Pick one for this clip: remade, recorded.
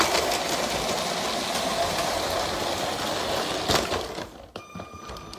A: recorded